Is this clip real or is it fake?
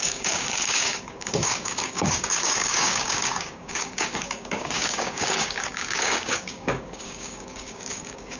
fake